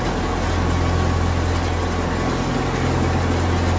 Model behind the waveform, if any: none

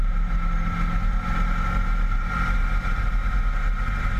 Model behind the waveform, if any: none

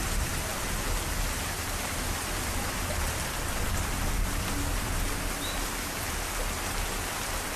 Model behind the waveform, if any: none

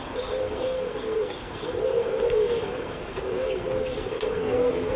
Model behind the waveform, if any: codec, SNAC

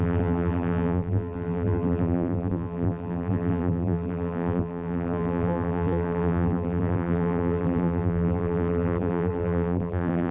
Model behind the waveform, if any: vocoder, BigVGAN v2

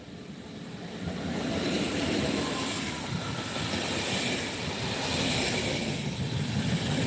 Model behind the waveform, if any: none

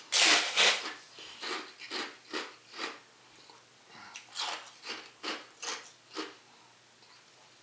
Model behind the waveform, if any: none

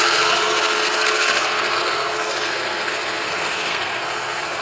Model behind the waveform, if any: codec, SNAC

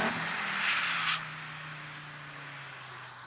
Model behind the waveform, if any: none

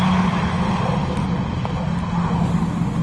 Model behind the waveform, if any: none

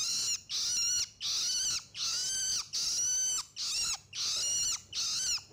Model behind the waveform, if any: none